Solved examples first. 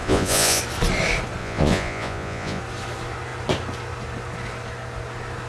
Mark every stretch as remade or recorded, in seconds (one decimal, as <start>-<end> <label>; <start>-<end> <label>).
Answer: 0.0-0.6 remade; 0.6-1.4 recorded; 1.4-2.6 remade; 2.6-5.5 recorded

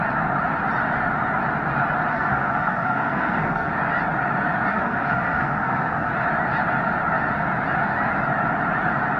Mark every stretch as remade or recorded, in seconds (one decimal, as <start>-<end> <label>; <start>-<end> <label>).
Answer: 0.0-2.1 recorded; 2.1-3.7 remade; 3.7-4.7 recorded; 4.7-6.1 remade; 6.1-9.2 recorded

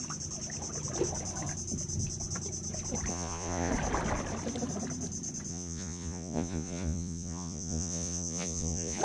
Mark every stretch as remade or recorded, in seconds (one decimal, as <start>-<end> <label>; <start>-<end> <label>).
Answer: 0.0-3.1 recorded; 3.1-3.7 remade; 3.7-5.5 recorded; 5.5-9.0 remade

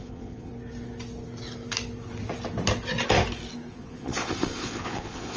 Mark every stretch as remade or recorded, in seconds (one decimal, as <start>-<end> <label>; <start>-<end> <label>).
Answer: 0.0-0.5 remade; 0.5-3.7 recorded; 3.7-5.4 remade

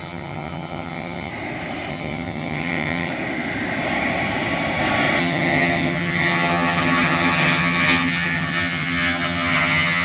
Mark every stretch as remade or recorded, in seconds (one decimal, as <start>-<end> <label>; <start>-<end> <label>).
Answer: 0.0-1.3 remade; 1.3-1.9 recorded; 1.9-3.1 remade; 3.1-5.2 recorded; 5.2-10.0 remade

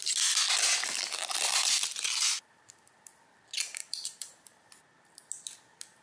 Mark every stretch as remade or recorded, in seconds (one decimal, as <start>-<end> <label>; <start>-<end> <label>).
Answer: 0.0-1.5 recorded; 1.5-2.7 remade; 2.7-3.8 recorded; 3.8-4.7 remade; 4.7-6.0 recorded